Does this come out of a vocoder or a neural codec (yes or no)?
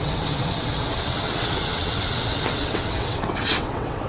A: yes